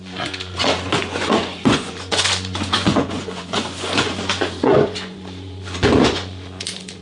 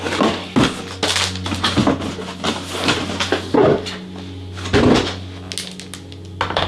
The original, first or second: second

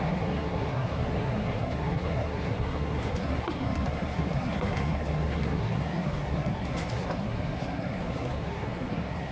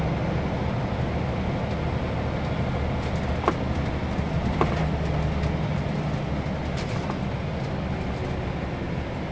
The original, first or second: second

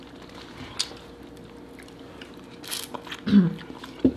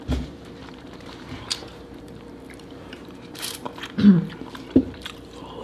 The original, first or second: first